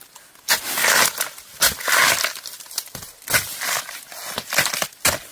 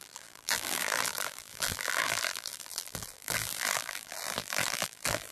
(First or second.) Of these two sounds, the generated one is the second